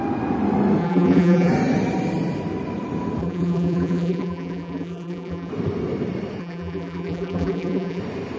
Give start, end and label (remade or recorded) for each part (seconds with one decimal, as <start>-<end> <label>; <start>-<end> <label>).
0.0-0.8 recorded; 0.8-1.5 remade; 1.5-3.2 recorded; 3.2-5.5 remade; 5.5-6.4 recorded; 6.4-8.0 remade; 8.0-8.4 recorded